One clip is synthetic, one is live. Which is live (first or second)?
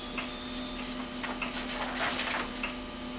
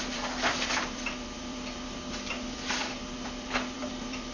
first